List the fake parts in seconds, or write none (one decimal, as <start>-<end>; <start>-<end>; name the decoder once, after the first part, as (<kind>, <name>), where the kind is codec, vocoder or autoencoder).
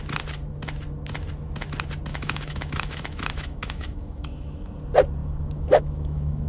2.1-4.7 (autoencoder, DAC-VAE); 5.2-6.5